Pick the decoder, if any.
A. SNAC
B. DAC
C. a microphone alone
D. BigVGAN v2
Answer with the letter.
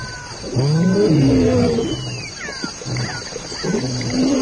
C